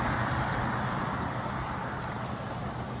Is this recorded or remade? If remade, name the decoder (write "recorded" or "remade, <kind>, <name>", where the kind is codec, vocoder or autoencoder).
remade, vocoder, BigVGAN v2